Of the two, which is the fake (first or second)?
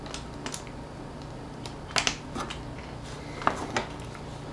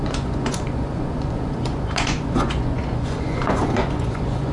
second